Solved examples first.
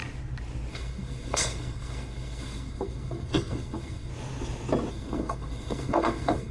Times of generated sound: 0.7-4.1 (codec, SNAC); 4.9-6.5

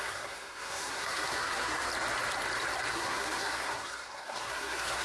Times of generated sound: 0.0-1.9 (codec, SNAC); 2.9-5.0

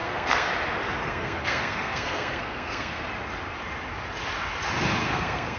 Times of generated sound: 0.0-0.5 (codec, SNAC); 1.0-3.0; 5.0-5.6

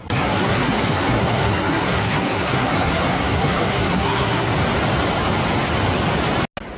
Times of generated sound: 0.0-4.5 (codec, SNAC)

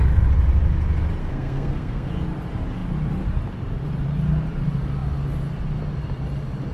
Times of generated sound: 1.2-2.1 (codec, SNAC)

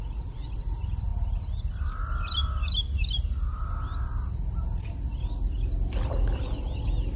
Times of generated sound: none

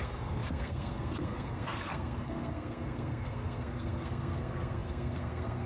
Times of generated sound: 0.0-5.7 (codec, SNAC)

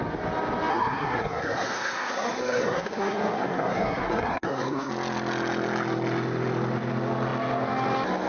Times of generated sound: 0.7-4.9 (codec, SNAC)